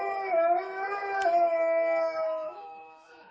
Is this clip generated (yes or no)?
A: yes